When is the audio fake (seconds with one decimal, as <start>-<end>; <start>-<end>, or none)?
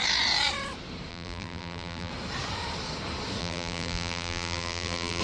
1.1-2.1; 3.4-5.2